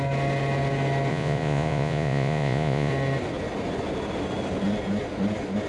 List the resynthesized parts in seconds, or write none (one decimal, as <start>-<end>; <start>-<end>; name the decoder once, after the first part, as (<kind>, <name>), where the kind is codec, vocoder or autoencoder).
1.1-2.9 (vocoder, Vocos)